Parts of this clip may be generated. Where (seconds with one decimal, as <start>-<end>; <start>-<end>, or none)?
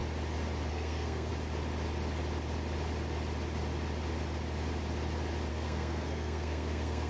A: 0.7-1.3; 5.5-7.1